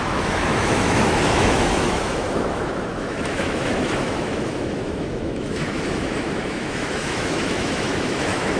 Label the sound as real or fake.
fake